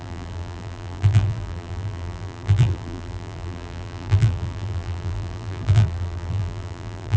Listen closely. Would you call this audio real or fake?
fake